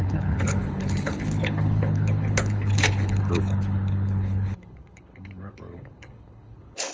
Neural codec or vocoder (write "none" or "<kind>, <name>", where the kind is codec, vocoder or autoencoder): codec, HILCodec